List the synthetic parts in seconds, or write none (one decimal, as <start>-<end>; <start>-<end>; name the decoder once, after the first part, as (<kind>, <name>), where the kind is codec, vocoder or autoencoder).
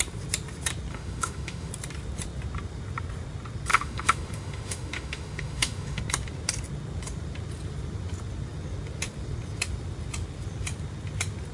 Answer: 0.9-1.7 (autoencoder, DAC-VAE); 3.7-6.0